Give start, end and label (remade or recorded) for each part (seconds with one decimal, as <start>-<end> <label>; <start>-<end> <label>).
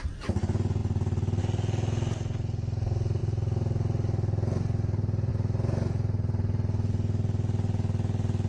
0.0-8.5 recorded